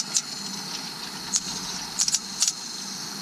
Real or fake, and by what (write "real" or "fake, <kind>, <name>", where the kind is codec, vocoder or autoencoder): real